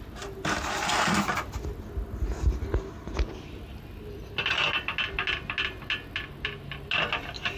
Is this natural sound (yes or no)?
yes